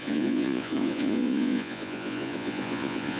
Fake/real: fake